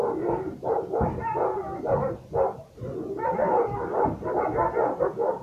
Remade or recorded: recorded